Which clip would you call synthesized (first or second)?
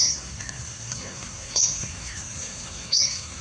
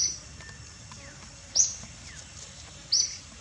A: first